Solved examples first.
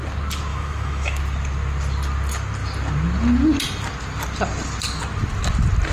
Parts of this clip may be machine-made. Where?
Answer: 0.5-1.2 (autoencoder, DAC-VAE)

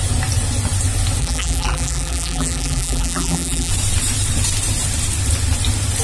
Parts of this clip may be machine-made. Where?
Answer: 1.2-3.7 (vocoder, BigVGAN v2)

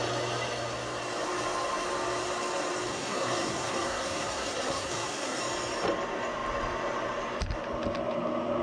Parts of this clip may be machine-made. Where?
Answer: 2.9-5.4 (codec, SNAC)

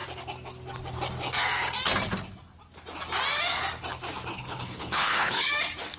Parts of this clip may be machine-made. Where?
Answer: 4.3-5.5 (codec, HILCodec)

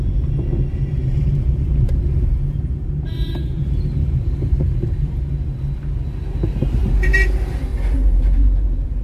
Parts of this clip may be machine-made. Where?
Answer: 1.0-5.3 (vocoder, BigVGAN v2); 7.7-9.0

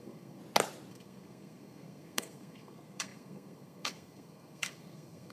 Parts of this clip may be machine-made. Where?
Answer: 0.0-0.4 (codec, SNAC); 0.9-5.3

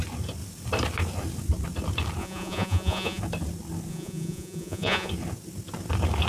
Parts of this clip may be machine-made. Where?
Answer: 2.2-3.2 (vocoder, Vocos); 3.9-5.1

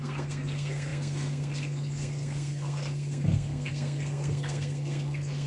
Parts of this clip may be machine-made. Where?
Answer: 0.0-5.5 (codec, SNAC)